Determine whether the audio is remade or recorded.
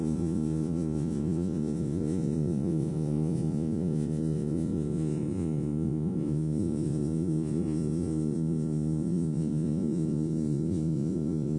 remade